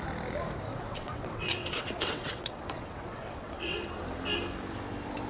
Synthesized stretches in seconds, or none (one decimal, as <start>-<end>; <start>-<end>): 0.7-3.9